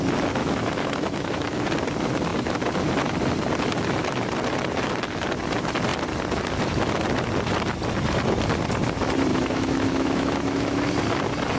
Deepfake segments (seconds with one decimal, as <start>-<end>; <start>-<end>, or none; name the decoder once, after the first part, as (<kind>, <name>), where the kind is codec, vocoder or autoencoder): 0.4-1.7 (autoencoder, DAC-VAE); 9.3-10.9

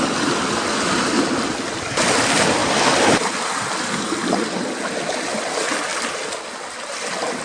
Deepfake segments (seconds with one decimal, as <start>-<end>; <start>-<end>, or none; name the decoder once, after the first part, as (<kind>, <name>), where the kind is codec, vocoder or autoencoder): none

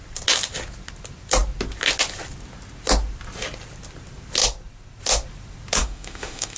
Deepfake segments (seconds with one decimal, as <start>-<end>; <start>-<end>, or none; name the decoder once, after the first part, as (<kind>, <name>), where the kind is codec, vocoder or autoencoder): 5.8-6.6 (autoencoder, DAC-VAE)

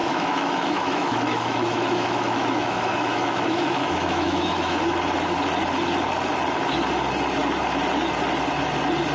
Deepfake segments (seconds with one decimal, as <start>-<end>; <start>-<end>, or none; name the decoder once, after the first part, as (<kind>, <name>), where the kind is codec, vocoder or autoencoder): 0.0-4.8 (autoencoder, DAC-VAE)

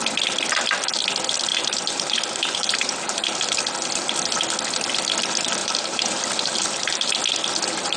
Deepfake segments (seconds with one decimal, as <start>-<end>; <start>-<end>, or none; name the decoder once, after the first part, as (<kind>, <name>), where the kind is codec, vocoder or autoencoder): 1.5-3.6 (vocoder, BigVGAN v2); 5.6-7.1

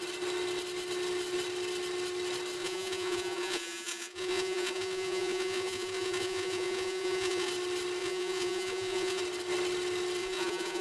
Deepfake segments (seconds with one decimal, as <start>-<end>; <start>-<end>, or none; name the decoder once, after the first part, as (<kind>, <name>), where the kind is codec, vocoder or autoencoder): 2.6-7.5 (vocoder, Vocos); 8.0-9.2; 10.2-10.8